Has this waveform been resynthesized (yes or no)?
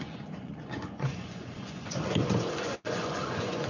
yes